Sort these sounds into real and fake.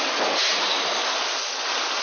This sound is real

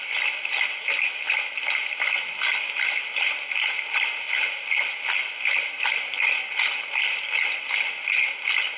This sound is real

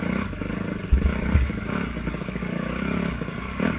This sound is fake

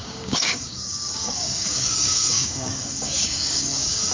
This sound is fake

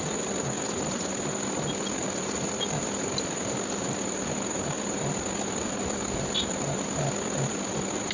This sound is real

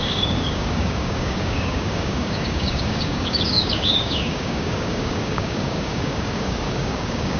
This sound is fake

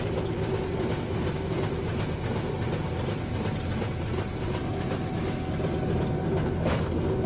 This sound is real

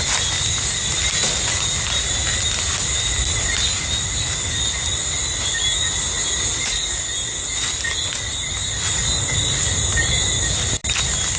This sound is real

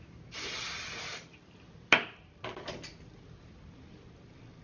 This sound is real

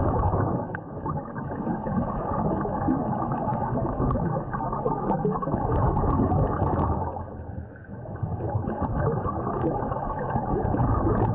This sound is fake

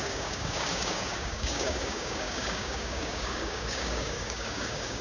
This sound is fake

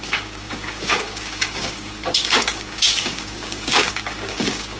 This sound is fake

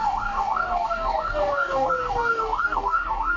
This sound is fake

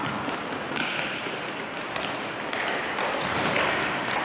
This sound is real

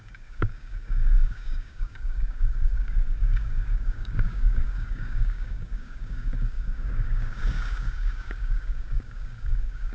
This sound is fake